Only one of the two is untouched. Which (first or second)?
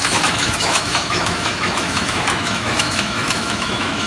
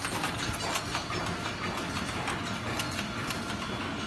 second